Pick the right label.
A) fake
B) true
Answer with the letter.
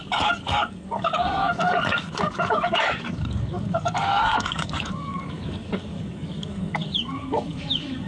A